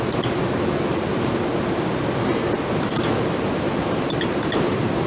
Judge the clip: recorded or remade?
recorded